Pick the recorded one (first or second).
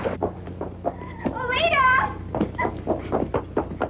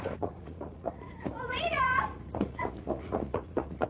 first